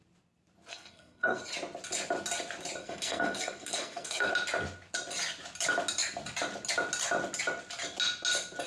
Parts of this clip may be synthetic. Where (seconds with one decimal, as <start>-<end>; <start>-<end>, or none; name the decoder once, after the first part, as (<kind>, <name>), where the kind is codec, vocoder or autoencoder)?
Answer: 0.7-1.4 (codec, SNAC); 2.8-4.3